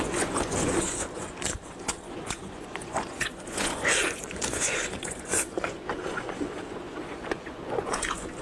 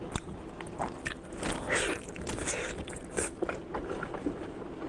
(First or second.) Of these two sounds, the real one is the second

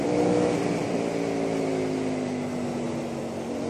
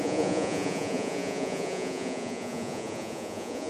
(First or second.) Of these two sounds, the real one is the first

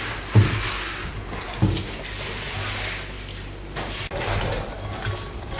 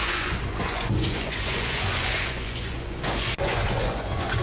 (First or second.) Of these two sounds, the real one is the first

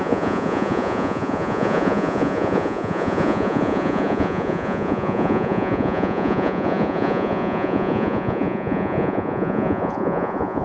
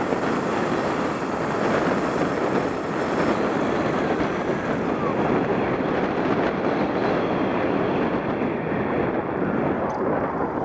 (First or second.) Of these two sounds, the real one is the second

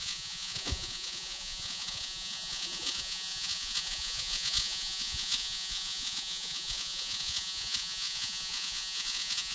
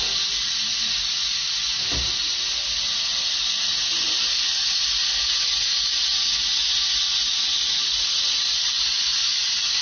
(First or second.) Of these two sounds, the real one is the second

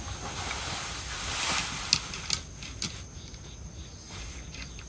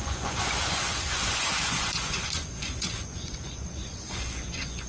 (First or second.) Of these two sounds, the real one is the first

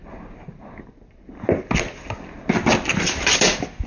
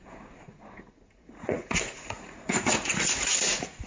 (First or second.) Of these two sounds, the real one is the first